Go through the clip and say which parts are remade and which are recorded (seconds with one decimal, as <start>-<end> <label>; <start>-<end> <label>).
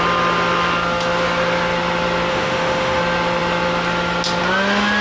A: 0.0-2.3 recorded; 2.3-3.0 remade; 3.0-5.0 recorded